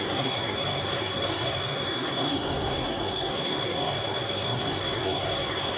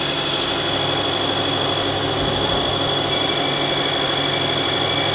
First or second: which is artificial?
first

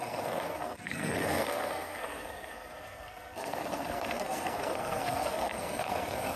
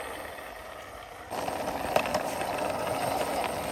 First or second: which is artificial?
first